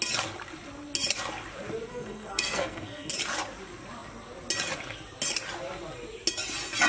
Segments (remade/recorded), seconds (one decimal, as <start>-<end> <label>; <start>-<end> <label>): 0.0-1.9 recorded; 1.9-3.1 remade; 3.1-6.9 recorded